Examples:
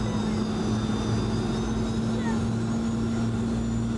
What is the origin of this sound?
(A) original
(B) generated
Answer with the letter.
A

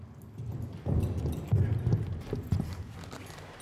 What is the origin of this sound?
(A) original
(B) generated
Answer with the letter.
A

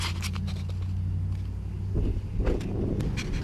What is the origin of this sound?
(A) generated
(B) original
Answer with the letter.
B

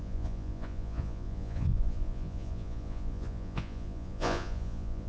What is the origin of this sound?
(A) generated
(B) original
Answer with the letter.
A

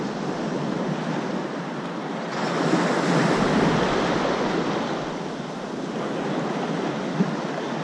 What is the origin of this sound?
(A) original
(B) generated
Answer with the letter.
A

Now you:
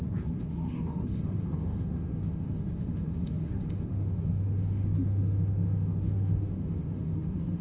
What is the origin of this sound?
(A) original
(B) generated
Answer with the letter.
B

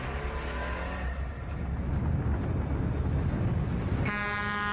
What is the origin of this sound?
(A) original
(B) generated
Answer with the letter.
A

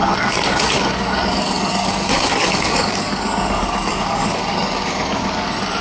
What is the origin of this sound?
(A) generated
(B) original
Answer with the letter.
A